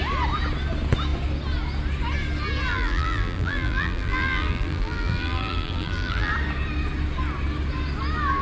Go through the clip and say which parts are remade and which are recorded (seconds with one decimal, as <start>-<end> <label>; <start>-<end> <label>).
0.0-2.7 recorded; 2.7-6.3 remade; 6.3-8.4 recorded